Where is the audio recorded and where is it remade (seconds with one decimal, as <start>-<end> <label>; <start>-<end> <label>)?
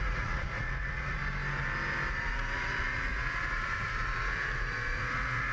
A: 0.0-1.2 remade; 1.2-2.1 recorded; 2.1-5.5 remade